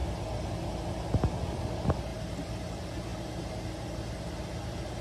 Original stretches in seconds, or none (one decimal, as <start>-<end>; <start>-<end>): 0.0-5.0